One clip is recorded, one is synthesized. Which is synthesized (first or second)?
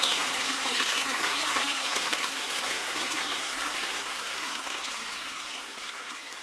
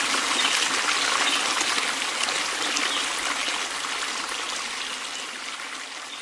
first